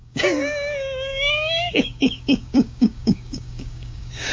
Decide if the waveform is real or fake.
fake